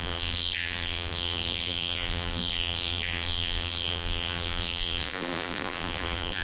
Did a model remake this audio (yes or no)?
yes